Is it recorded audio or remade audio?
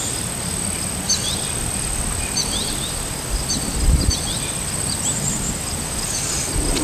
recorded